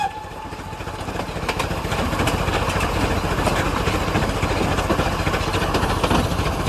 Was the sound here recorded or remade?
recorded